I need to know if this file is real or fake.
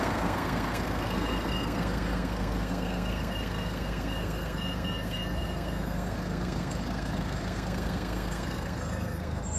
fake